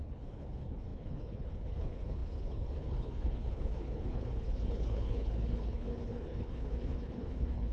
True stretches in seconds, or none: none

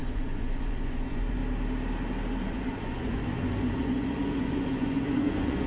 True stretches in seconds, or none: 1.4-2.5

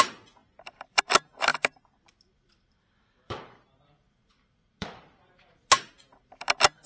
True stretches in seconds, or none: 0.0-0.4; 1.0-1.5; 5.2-6.9

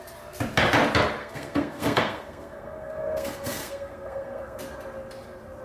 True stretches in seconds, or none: 0.0-1.2; 4.6-5.6

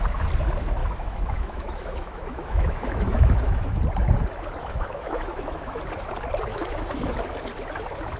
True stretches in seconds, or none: 0.0-0.8; 3.8-4.6; 5.8-6.5; 7.1-8.2

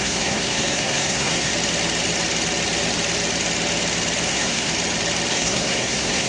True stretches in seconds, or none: 1.5-4.3; 4.7-5.3

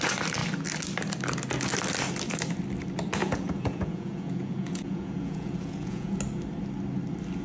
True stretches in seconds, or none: 0.0-3.2; 6.2-7.4

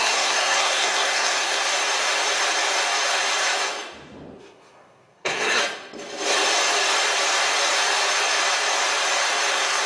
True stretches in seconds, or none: 1.7-4.4; 5.6-9.5